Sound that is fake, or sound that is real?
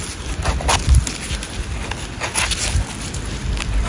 real